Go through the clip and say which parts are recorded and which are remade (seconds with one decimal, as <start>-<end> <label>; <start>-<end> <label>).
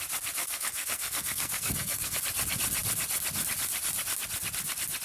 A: 0.0-0.4 recorded; 0.4-2.2 remade; 2.2-5.0 recorded